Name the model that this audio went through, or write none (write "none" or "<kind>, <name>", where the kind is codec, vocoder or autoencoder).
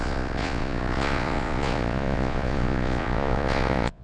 vocoder, Vocos